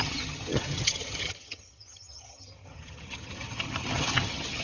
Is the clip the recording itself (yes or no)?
no